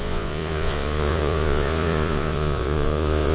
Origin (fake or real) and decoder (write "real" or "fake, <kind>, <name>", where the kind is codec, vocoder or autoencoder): fake, vocoder, Vocos